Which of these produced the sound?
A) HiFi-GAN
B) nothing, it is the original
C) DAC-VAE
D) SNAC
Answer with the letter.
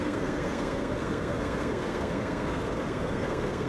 D